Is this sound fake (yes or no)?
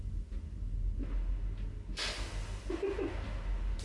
no